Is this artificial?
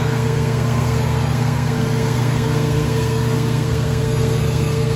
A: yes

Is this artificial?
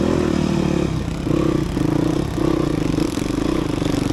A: no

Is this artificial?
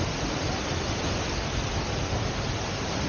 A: no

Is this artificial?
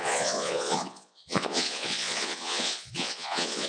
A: yes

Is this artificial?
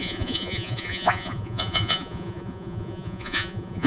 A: yes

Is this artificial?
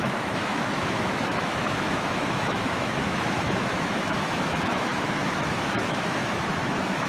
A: yes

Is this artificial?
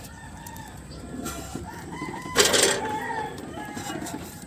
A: yes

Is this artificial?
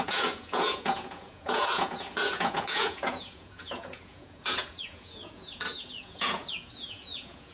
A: yes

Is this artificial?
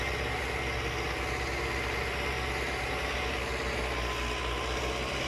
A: no